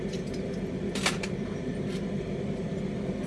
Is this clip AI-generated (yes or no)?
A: no